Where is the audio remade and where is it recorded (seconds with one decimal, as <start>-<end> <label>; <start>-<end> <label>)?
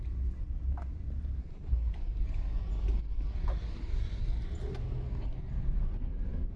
0.0-1.4 recorded; 1.4-1.9 remade; 1.9-6.6 recorded